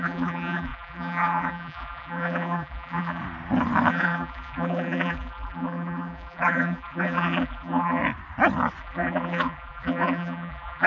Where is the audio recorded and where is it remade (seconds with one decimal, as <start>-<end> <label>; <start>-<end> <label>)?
0.0-3.2 remade; 3.2-3.9 recorded; 3.9-8.0 remade; 8.0-8.8 recorded; 8.8-10.9 remade